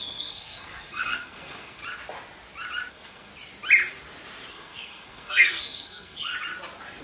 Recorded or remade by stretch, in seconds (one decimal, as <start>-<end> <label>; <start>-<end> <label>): 0.0-1.8 remade; 1.8-2.9 recorded; 2.9-3.3 remade; 3.3-4.5 recorded; 4.5-6.3 remade; 6.3-7.0 recorded